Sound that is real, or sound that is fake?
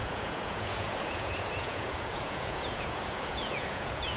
fake